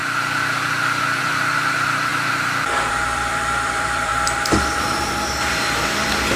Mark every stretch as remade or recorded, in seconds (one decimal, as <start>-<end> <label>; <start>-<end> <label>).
0.0-1.2 recorded; 1.2-6.4 remade